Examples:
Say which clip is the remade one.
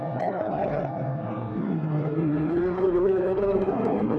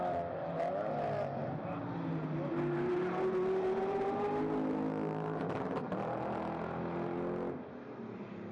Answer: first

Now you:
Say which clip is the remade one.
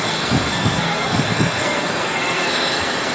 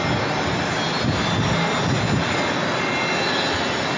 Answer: first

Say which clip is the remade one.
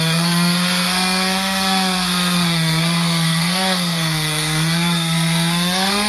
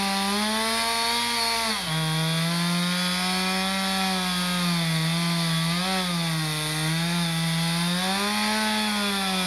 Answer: first